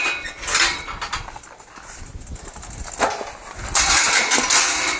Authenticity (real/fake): real